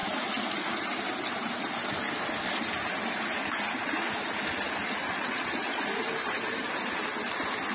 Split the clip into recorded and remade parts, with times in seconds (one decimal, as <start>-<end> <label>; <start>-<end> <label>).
0.0-5.1 recorded; 5.1-5.8 remade; 5.8-7.7 recorded